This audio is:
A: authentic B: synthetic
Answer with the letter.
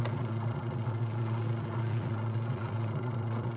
B